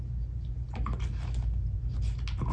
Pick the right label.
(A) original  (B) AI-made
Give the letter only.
A